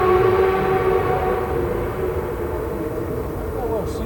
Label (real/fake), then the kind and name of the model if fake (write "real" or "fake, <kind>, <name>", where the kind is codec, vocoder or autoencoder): real